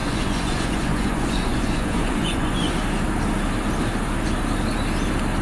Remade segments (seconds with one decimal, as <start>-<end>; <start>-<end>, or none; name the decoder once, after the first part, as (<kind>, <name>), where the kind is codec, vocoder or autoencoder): 0.0-2.7 (vocoder, Vocos)